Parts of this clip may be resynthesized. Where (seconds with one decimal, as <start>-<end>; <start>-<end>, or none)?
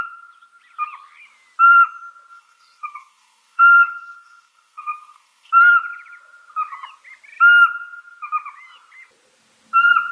2.3-5.5